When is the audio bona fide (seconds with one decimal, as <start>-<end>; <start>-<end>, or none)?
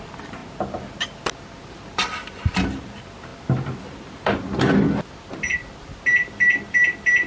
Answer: 0.0-7.3